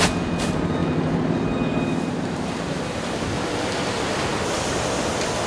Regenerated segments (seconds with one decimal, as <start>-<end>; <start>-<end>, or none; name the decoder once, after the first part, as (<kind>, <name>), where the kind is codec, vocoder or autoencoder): none

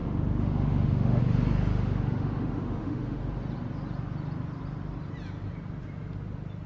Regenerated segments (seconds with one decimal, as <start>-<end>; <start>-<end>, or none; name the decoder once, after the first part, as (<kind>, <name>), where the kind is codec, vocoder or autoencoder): 0.0-1.2 (autoencoder, DAC-VAE); 1.7-3.2

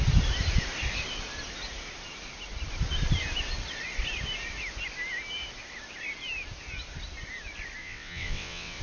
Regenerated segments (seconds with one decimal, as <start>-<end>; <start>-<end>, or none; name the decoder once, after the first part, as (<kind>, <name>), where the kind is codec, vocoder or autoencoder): 7.8-8.8 (vocoder, WaveNeXt)

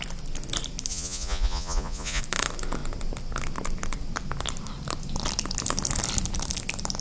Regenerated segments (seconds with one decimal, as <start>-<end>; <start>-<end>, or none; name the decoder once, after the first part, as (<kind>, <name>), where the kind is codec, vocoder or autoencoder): 0.9-2.2 (vocoder, Vocos)